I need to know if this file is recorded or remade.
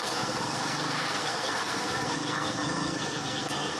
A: remade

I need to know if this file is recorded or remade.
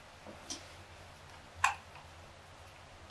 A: recorded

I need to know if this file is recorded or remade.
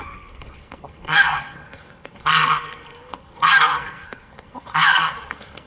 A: remade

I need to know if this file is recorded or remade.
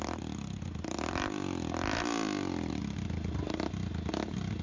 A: recorded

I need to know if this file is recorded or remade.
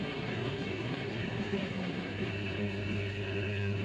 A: remade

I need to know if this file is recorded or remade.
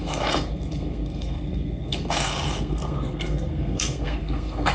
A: remade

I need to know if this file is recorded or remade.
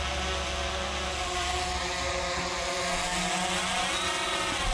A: recorded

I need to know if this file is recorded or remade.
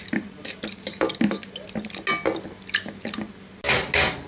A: recorded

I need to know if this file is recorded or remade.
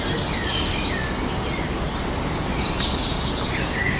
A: recorded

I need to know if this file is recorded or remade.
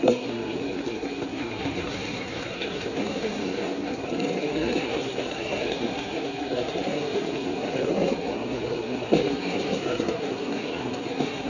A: remade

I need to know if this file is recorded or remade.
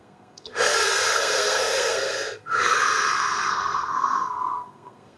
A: remade